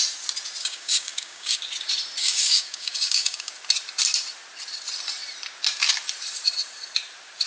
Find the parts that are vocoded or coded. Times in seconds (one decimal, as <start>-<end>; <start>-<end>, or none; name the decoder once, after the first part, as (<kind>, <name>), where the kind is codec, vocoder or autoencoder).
0.6-1.6 (codec, DAC); 2.2-3.5